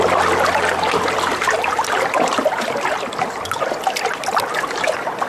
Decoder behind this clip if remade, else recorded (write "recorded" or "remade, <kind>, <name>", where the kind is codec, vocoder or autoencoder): recorded